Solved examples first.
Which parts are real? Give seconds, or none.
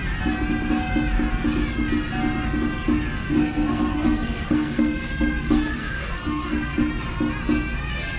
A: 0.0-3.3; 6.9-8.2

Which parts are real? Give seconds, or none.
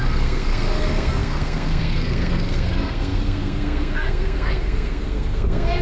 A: none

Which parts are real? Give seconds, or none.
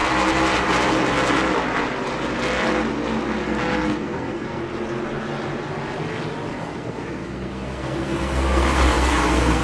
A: 0.0-3.4; 4.6-6.5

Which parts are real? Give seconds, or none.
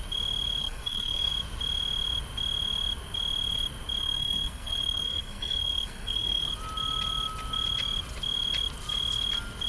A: 0.0-0.6; 1.3-4.0; 6.5-9.7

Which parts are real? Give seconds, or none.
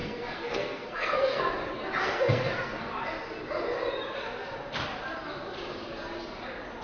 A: 1.5-2.0; 2.9-6.8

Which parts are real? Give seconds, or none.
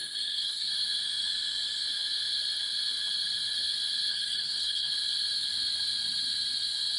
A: 0.7-4.1; 4.9-7.0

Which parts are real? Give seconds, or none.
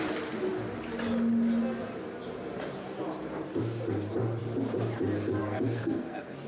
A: 0.0-5.4